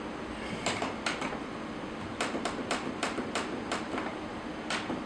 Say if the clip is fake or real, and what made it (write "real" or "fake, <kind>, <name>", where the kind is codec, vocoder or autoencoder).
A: fake, vocoder, BigVGAN v2